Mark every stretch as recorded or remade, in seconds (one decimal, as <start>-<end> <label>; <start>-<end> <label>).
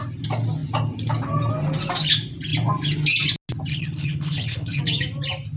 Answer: 0.0-3.7 recorded; 3.7-4.8 remade; 4.8-5.6 recorded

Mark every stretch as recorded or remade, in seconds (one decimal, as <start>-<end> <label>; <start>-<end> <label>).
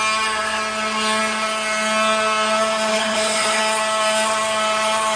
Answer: 0.0-2.9 recorded; 2.9-3.6 remade; 3.6-5.2 recorded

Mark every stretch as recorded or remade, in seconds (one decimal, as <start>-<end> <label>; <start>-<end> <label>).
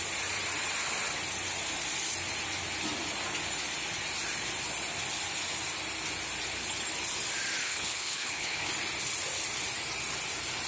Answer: 0.0-7.6 recorded; 7.6-8.7 remade; 8.7-10.7 recorded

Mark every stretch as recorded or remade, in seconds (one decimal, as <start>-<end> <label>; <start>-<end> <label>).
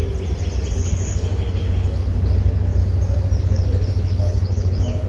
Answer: 0.0-0.7 recorded; 0.7-2.8 remade; 2.8-3.4 recorded; 3.4-5.1 remade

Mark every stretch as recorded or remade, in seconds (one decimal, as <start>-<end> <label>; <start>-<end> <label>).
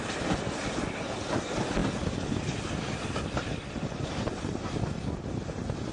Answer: 0.0-5.9 recorded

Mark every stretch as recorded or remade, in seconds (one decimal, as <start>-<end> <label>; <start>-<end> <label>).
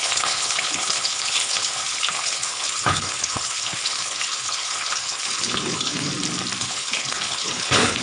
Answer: 0.0-6.1 remade; 6.1-6.6 recorded; 6.6-8.0 remade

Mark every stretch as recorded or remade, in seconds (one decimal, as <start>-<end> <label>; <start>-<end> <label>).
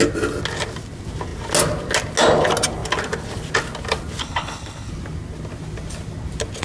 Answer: 0.0-4.2 recorded; 4.2-4.9 remade; 4.9-6.6 recorded